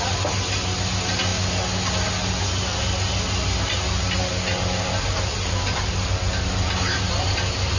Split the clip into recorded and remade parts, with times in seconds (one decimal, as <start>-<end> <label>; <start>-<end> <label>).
0.0-7.8 recorded